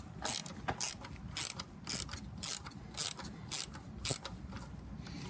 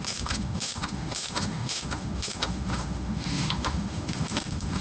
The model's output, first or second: second